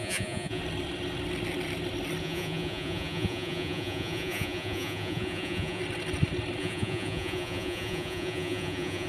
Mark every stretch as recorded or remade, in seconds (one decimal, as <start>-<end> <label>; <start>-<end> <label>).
0.0-0.6 remade; 0.6-2.2 recorded; 2.2-5.8 remade; 5.8-6.6 recorded; 6.6-9.1 remade